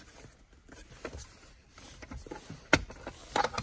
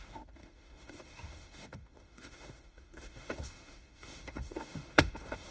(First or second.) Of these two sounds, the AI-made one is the second